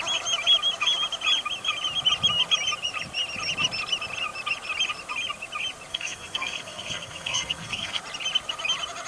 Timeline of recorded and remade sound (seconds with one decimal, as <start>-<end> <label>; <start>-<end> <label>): 0.0-5.9 recorded; 5.9-8.0 remade; 8.0-9.1 recorded